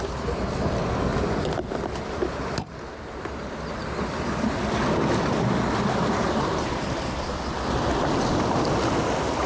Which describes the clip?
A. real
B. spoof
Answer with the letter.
A